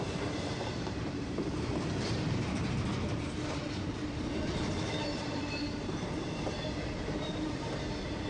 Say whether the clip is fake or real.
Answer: fake